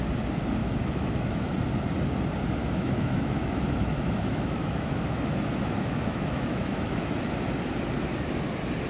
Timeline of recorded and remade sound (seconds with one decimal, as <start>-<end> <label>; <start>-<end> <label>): 0.0-0.6 recorded; 0.6-1.5 remade; 1.5-2.6 recorded; 2.6-7.0 remade; 7.0-8.9 recorded